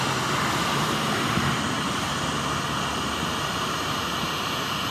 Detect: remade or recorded recorded